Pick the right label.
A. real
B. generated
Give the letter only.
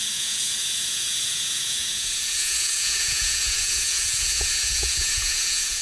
B